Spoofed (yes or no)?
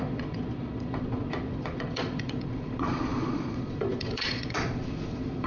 yes